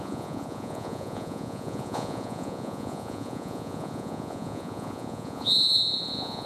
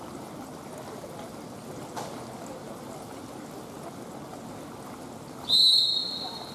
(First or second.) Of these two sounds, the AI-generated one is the first